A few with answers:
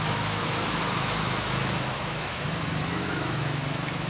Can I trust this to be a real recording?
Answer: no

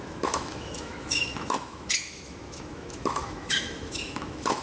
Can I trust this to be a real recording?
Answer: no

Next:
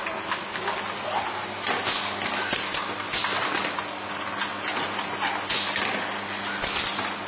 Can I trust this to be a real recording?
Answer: yes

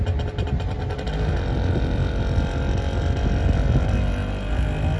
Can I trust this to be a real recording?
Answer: yes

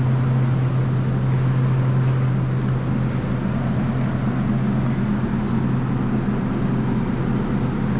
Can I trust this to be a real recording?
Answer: yes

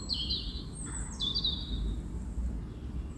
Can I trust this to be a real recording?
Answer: yes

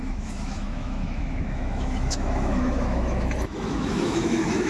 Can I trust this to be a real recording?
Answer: no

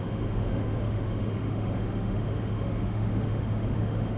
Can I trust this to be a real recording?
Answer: no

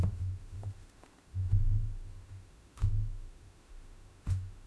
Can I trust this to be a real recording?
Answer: no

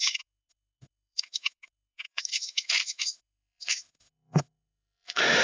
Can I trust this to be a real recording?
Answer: no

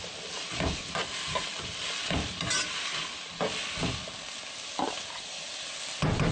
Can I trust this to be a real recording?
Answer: yes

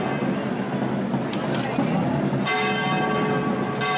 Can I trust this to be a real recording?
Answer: yes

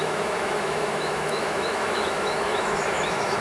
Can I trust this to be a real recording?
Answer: no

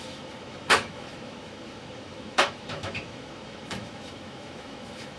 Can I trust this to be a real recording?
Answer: no